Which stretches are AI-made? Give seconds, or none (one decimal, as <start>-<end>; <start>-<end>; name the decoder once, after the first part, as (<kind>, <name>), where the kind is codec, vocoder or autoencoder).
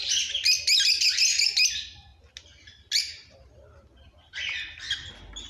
none